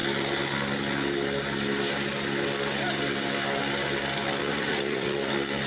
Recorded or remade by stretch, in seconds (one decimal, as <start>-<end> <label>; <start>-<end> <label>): 0.0-4.4 recorded; 4.4-5.3 remade; 5.3-5.7 recorded